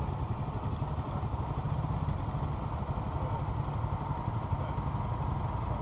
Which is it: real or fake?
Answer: real